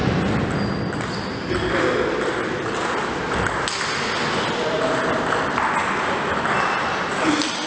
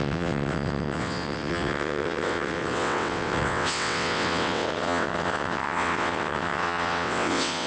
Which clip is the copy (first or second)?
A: second